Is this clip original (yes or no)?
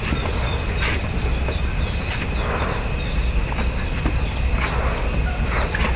yes